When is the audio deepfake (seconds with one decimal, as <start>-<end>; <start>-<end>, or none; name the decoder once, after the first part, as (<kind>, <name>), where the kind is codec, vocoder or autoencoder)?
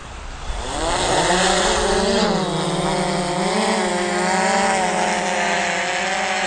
none